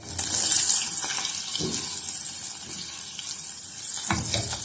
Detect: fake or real real